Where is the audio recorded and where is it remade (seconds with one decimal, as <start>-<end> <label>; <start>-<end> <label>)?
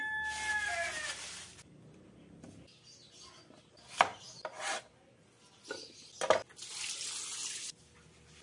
0.0-8.4 recorded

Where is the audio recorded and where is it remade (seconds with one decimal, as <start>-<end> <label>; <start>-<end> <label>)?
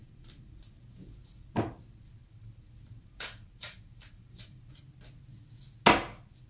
0.0-1.8 remade; 1.8-2.2 recorded; 2.2-4.8 remade; 4.8-6.5 recorded